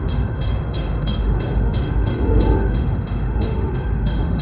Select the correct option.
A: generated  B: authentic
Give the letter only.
A